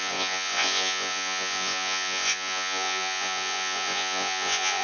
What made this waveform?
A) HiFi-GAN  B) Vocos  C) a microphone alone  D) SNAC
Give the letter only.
B